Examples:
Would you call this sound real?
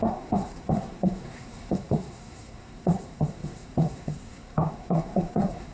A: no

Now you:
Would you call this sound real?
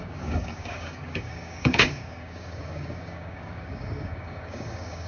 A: no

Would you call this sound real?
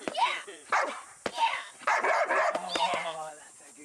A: no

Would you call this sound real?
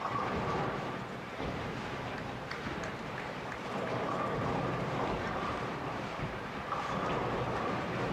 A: no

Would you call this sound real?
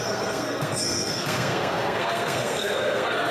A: no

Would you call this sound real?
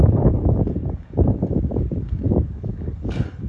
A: no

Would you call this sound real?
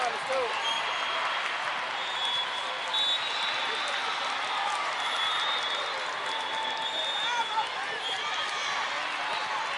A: yes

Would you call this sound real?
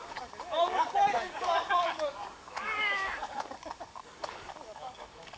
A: no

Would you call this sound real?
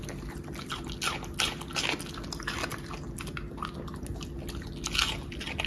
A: yes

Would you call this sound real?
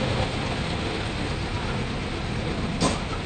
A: yes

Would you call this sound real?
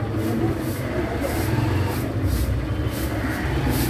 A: yes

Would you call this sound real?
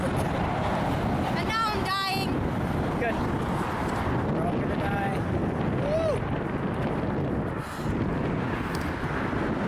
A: yes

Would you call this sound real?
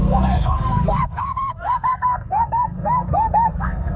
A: no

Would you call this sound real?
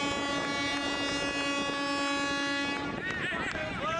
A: yes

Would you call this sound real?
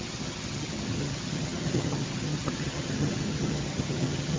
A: no